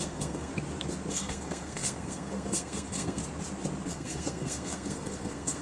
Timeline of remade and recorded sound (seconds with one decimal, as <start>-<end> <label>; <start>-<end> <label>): 0.0-0.5 remade; 0.5-1.1 recorded; 1.1-3.2 remade; 3.2-3.9 recorded; 3.9-5.6 remade